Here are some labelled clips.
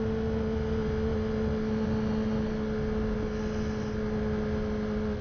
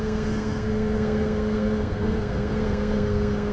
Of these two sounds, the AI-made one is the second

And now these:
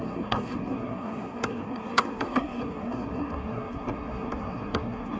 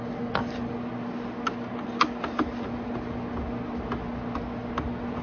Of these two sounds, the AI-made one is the first